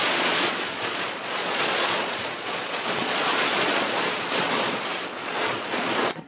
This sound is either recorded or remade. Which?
remade